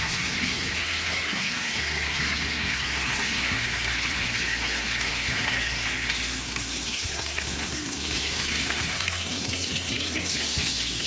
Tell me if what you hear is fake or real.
fake